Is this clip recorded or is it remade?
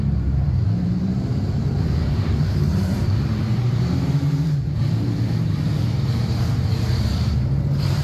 remade